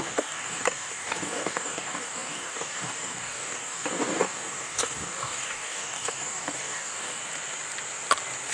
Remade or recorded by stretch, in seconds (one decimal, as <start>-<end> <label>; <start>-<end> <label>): 0.0-7.2 remade; 7.2-8.5 recorded